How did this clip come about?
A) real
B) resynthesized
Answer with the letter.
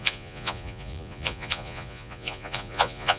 B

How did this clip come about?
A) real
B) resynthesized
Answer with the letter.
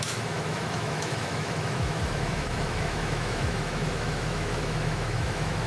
B